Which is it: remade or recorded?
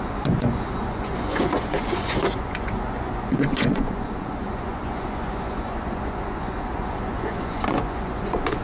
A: remade